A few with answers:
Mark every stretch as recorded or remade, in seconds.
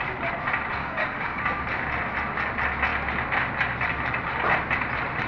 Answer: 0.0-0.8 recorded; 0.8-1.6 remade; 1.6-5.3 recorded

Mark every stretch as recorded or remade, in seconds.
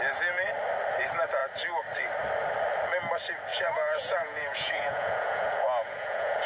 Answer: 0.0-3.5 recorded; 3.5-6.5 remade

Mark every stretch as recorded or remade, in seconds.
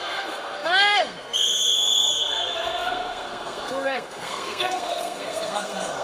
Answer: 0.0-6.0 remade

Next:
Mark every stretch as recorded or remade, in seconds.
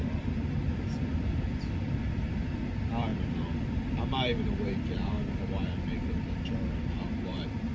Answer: 0.0-7.7 remade